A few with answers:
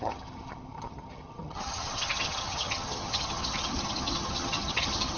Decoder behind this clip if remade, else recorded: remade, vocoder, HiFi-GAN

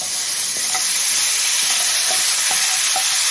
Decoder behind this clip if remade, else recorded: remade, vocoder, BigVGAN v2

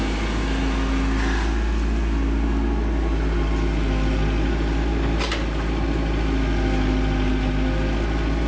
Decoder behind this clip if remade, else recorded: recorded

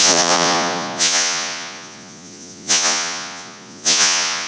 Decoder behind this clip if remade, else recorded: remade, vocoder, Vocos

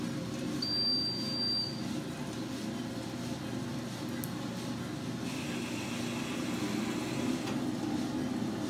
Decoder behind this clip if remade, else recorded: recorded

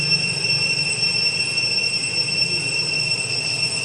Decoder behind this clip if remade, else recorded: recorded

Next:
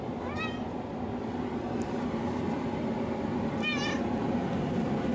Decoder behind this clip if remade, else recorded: recorded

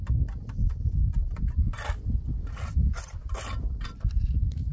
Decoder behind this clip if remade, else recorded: recorded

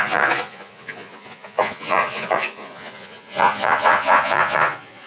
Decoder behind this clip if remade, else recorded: remade, vocoder, Vocos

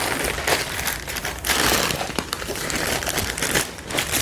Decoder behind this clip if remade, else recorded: remade, vocoder, BigVGAN v2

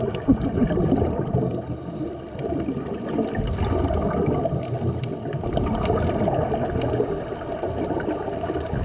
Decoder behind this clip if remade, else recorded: recorded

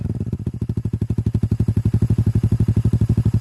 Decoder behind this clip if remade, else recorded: recorded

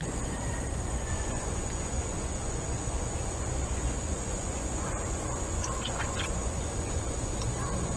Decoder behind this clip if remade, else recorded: remade, vocoder, Vocos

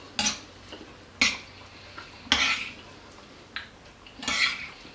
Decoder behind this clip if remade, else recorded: recorded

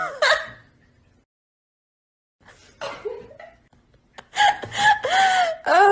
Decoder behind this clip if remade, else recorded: recorded